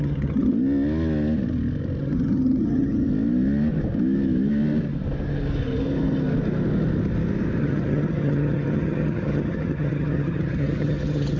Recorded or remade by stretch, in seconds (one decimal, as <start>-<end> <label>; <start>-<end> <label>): 0.0-0.5 remade; 0.5-2.0 recorded; 2.0-3.1 remade; 3.1-7.6 recorded; 7.6-11.4 remade

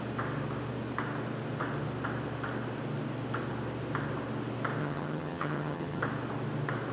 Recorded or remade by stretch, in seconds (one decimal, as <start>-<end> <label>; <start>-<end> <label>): 0.0-4.8 recorded; 4.8-6.0 remade; 6.0-6.9 recorded

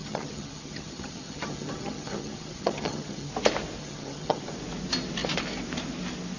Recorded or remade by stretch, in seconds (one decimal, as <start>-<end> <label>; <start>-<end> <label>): 0.0-3.3 remade; 3.3-3.8 recorded; 3.8-4.4 remade; 4.4-6.4 recorded

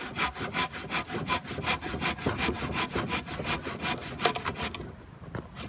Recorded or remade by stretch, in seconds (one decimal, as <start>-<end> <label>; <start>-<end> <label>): 0.0-5.7 recorded